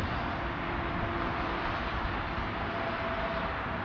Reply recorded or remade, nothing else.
recorded